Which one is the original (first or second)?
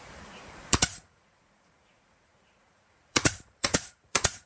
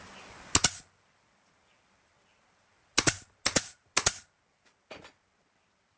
second